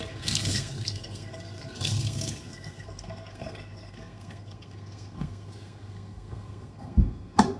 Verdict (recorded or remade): remade